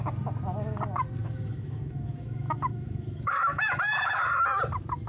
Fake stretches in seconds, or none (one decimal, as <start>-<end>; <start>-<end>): 1.2-4.3